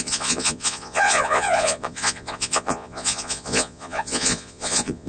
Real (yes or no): no